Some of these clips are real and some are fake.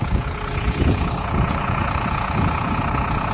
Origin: fake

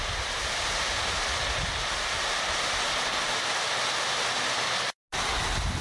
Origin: real